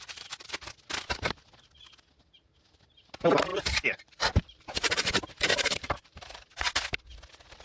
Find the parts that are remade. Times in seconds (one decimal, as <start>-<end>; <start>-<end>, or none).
3.5-4.6; 5.5-6.4